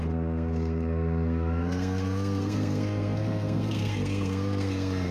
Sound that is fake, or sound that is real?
fake